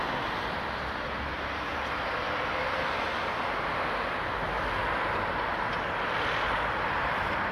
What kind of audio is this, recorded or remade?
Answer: recorded